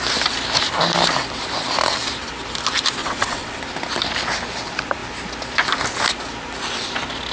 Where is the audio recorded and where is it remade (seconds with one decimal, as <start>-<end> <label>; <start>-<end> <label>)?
0.0-3.0 recorded; 3.0-3.6 remade; 3.6-7.3 recorded